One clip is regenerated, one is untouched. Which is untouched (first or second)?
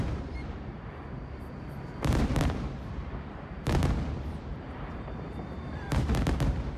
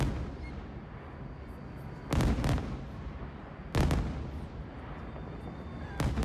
second